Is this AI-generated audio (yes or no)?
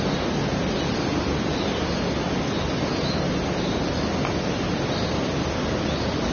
no